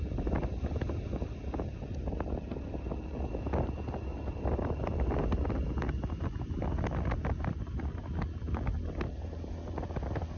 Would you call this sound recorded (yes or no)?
yes